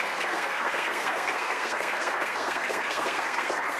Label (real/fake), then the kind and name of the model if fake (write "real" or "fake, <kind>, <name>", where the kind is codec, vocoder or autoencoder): fake, codec, SNAC